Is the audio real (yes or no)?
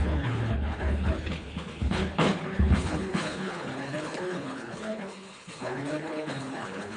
no